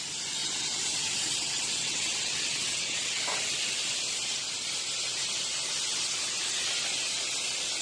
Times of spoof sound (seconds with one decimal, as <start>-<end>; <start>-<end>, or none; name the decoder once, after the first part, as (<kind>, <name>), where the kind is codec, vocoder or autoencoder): 0.4-3.2 (vocoder, WaveNeXt)